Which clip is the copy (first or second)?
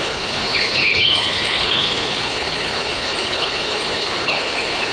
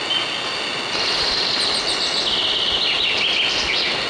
first